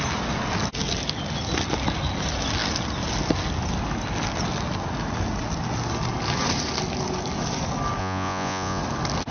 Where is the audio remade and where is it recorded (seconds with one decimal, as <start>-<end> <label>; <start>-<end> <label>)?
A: 0.0-8.0 recorded; 8.0-8.8 remade; 8.8-9.3 recorded